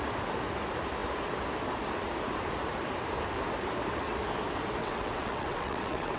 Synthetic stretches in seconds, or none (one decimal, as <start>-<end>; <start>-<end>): 4.8-6.2

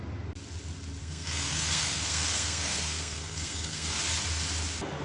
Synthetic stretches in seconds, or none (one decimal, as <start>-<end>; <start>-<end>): 1.0-4.0